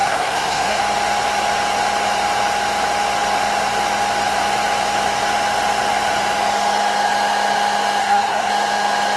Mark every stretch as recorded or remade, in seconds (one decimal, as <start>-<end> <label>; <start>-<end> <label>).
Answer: 0.0-0.8 remade; 0.8-8.0 recorded; 8.0-8.5 remade; 8.5-9.2 recorded